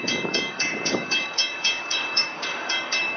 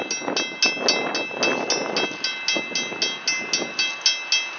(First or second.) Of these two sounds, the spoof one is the first